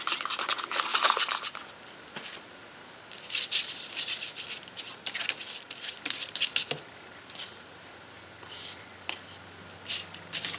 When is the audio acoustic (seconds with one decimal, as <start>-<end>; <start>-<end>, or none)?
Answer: 0.0-10.6